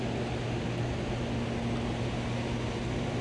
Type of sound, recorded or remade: recorded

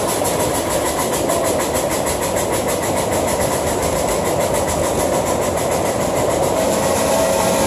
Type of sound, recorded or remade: recorded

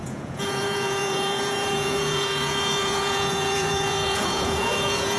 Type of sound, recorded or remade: remade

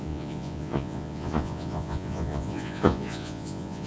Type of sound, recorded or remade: remade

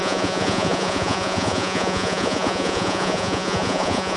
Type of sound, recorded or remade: remade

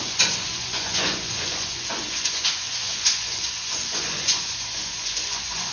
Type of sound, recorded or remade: remade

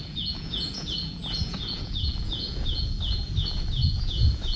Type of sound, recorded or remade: remade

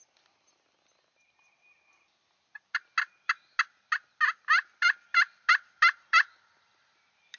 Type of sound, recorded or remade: recorded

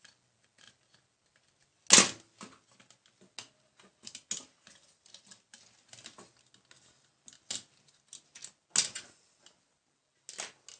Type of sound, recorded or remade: recorded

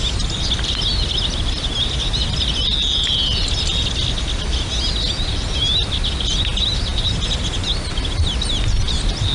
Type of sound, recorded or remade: recorded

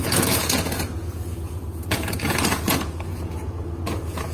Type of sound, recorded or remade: remade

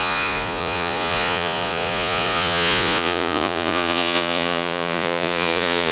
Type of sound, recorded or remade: remade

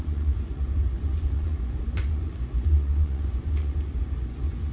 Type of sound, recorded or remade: remade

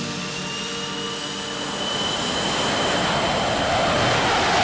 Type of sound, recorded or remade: recorded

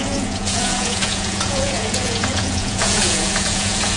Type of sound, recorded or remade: remade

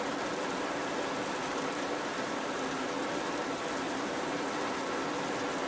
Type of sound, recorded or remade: recorded